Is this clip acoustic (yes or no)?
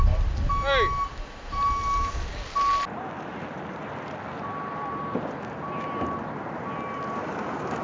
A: yes